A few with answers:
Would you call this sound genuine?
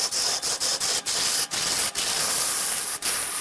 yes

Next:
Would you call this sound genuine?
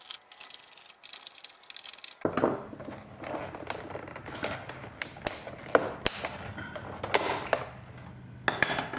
yes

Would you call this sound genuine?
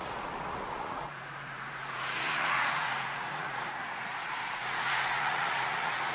no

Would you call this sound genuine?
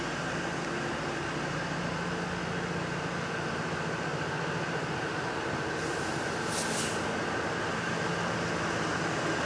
yes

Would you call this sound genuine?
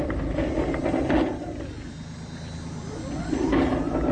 yes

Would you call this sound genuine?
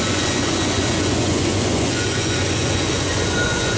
no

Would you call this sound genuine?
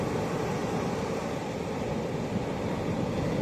yes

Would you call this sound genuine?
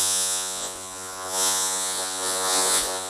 no